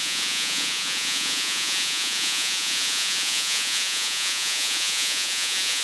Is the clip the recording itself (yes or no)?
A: no